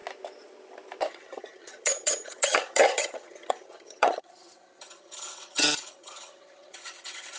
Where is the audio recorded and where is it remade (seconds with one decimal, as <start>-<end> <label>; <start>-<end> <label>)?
0.0-1.1 recorded; 1.1-7.4 remade